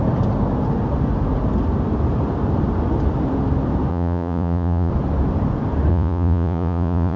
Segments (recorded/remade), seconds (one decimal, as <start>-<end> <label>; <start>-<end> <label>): 0.0-3.9 recorded; 3.9-4.9 remade; 4.9-5.9 recorded; 5.9-7.2 remade